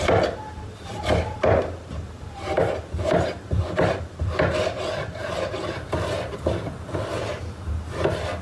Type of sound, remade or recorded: recorded